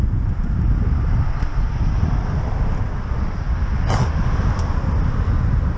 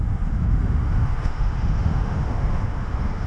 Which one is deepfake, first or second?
second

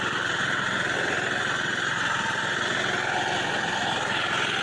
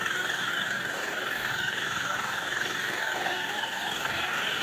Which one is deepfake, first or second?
second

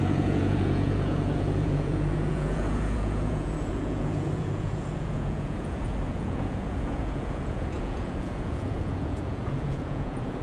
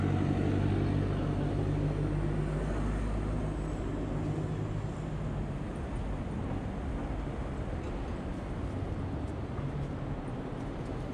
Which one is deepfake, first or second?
first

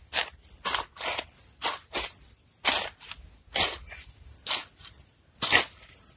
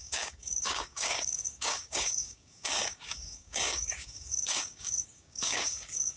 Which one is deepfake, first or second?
second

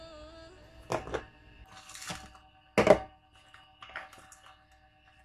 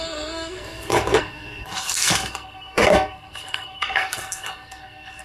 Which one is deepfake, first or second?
second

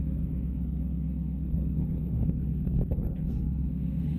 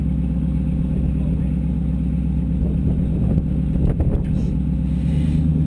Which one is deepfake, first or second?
first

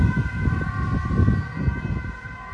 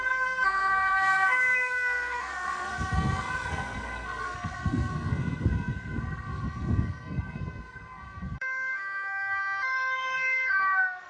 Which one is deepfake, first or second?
second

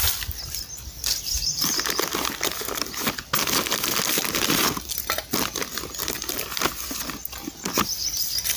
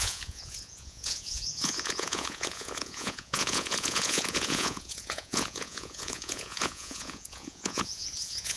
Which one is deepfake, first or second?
second